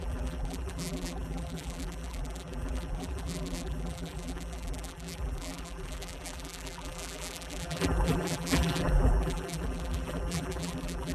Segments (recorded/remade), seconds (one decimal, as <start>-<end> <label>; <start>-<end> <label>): 0.0-11.1 remade